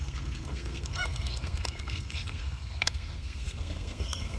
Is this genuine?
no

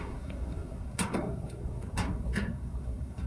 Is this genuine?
no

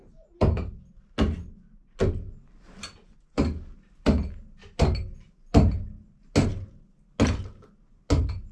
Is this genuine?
yes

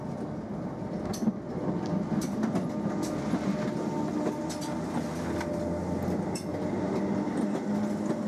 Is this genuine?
yes